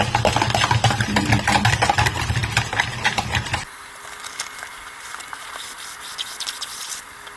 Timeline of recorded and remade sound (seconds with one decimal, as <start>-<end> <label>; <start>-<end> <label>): 0.0-7.4 recorded